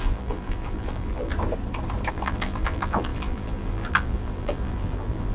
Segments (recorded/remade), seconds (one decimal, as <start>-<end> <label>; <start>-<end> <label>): 0.0-1.3 remade; 1.3-2.1 recorded; 2.1-5.3 remade